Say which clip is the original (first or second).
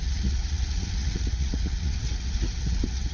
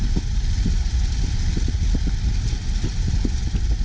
second